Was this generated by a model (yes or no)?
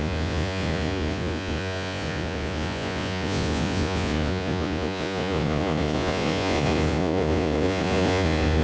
yes